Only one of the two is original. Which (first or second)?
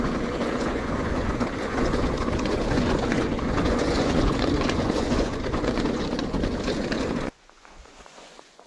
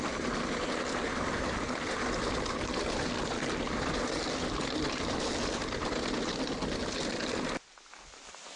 second